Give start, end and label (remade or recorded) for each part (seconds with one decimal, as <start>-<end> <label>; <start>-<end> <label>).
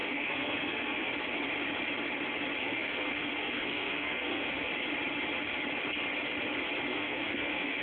0.0-1.1 remade; 1.1-2.6 recorded; 2.6-4.7 remade; 4.7-6.9 recorded; 6.9-7.8 remade